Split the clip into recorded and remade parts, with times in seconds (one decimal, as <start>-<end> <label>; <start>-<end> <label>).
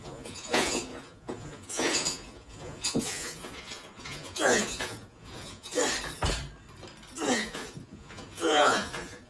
0.0-5.8 remade; 5.8-7.3 recorded; 7.3-9.3 remade